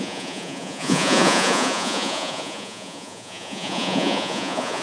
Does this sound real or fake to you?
fake